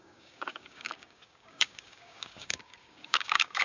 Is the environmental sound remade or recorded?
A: remade